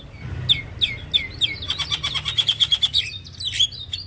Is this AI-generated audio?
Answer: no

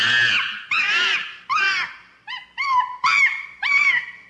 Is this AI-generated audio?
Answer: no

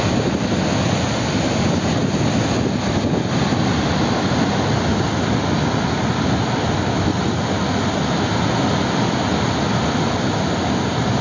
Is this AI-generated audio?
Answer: no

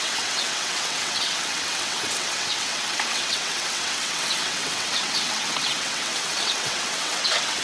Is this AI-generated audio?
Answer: yes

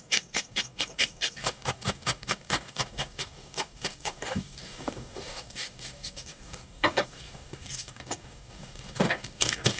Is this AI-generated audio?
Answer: yes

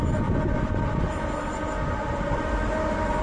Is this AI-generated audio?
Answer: no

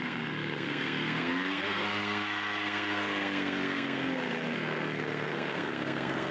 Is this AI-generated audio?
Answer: yes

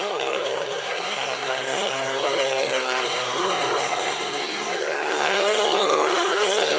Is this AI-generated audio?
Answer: yes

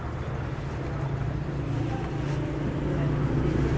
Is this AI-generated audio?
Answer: no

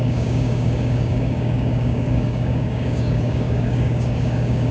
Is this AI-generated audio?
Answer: yes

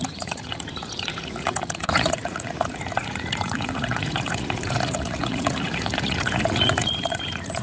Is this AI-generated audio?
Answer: yes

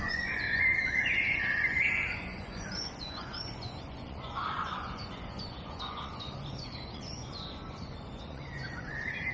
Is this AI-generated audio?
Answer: yes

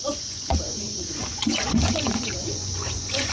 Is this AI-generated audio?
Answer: yes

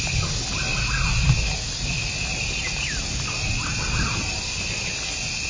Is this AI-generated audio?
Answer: no